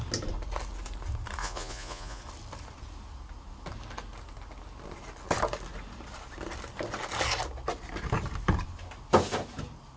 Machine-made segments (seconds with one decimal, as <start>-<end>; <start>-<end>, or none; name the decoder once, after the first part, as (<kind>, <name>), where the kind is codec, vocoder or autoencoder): 1.4-2.2 (vocoder, Vocos)